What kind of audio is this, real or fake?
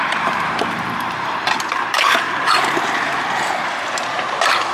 fake